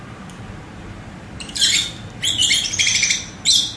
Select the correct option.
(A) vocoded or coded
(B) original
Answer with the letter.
B